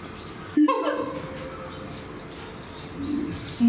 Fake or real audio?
real